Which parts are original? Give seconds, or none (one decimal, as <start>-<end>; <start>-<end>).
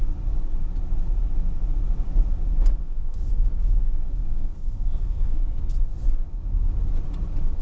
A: 0.0-2.8; 5.4-7.6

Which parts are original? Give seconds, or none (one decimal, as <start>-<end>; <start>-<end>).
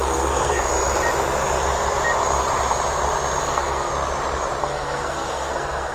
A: 0.7-3.4; 3.9-4.6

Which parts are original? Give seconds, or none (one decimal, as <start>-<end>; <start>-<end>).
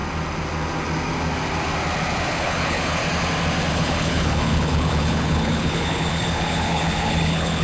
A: 0.0-2.3; 3.0-3.7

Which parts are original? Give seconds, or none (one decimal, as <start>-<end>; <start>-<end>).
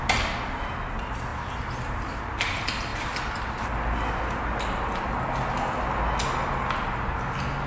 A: 0.0-1.3; 2.2-7.7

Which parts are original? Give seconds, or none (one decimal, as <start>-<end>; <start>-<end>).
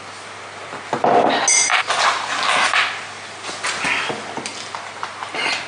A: 0.0-5.7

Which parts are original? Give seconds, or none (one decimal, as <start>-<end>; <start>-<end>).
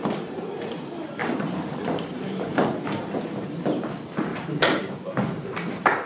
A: 0.5-1.2; 3.2-4.3; 4.9-6.1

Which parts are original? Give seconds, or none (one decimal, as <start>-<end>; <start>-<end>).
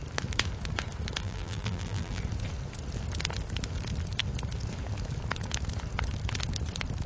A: 0.0-1.2; 2.2-7.1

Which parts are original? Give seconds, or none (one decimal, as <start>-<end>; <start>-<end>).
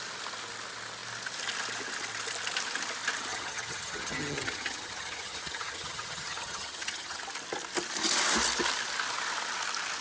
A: 0.0-3.3; 7.2-10.0